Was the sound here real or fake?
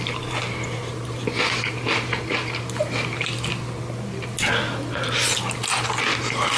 real